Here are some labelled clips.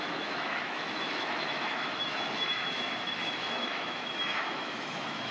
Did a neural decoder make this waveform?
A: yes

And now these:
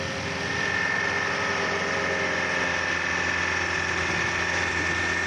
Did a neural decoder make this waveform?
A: no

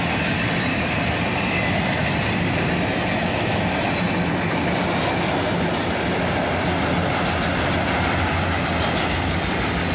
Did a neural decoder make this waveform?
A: no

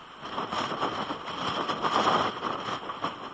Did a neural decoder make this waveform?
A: no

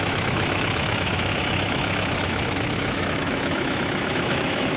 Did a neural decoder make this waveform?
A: yes